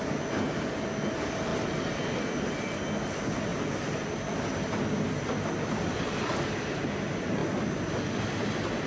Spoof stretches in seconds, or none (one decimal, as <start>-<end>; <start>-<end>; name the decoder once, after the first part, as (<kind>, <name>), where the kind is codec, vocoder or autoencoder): none